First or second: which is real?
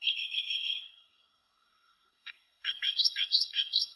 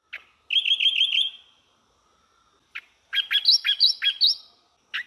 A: second